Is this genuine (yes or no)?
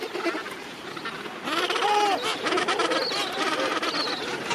yes